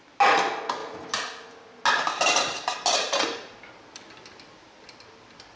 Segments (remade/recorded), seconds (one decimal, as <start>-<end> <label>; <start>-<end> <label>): 0.0-5.6 recorded